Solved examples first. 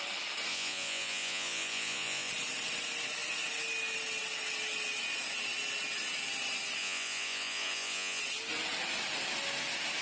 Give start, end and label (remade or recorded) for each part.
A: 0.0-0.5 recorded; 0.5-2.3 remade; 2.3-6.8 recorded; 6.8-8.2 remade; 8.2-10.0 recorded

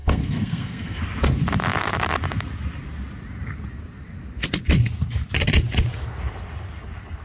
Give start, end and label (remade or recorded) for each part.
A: 0.0-1.0 remade; 1.0-7.2 recorded

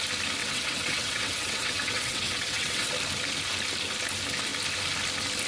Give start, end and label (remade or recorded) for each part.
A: 0.0-0.4 recorded; 0.4-2.9 remade; 2.9-5.5 recorded